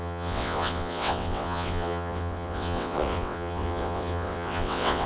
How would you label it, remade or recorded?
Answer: remade